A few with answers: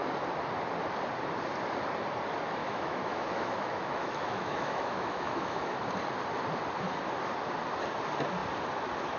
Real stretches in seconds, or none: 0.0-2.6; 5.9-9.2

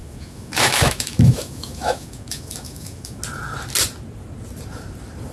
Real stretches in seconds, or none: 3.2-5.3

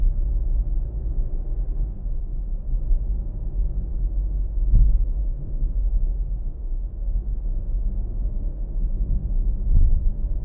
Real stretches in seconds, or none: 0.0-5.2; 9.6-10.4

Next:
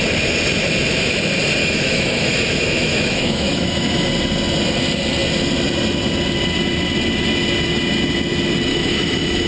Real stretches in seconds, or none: 0.0-1.6; 4.1-8.7

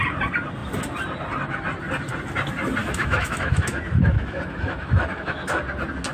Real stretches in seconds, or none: 0.0-2.8; 5.6-6.1